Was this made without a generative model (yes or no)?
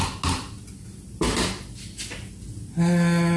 yes